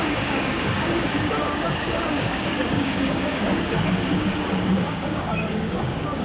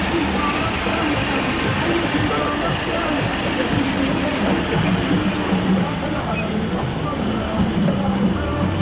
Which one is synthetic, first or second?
first